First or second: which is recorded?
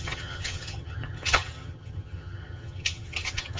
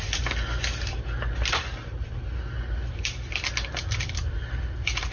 second